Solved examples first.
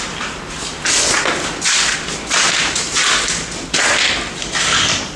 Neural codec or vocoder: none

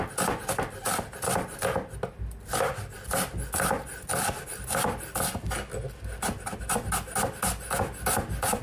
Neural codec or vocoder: none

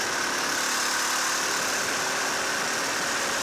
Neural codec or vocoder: none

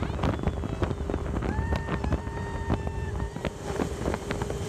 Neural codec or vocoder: vocoder, BigVGAN v2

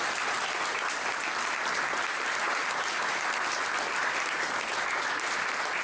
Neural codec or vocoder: none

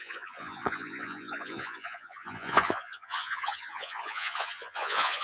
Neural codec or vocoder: vocoder, Vocos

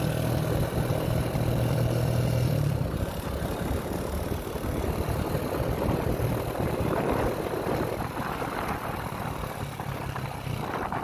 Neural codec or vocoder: none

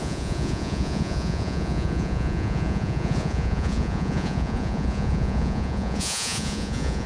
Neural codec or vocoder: vocoder, Vocos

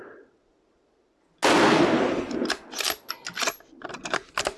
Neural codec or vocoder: none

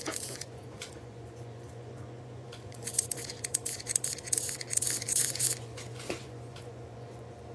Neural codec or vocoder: vocoder, Vocos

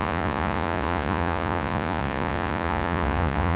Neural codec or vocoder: vocoder, Vocos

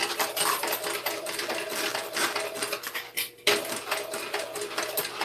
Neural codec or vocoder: none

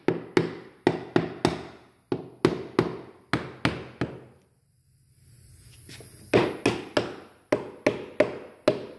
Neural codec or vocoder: none